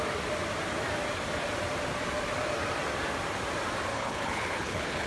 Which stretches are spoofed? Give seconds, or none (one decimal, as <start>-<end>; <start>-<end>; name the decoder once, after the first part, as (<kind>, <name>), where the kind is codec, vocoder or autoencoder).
3.9-5.1 (codec, HILCodec)